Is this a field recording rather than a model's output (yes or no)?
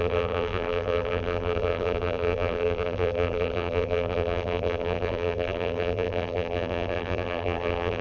no